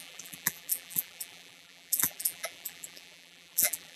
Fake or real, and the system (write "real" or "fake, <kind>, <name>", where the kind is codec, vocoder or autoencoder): fake, vocoder, BigVGAN v2